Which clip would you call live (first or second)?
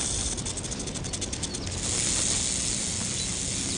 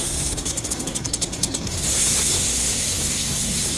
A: first